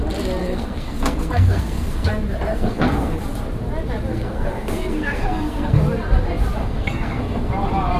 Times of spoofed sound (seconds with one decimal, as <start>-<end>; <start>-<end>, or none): 0.4-2.1; 2.5-3.2; 4.1-5.8; 6.6-7.5